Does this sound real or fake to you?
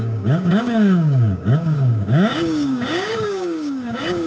fake